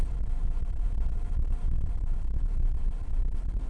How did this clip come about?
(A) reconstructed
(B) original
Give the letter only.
A